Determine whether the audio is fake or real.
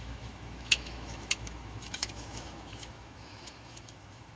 fake